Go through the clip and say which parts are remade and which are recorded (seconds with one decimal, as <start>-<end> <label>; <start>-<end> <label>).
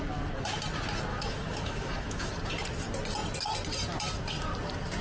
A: 0.0-1.1 recorded; 1.1-2.3 remade; 2.3-5.0 recorded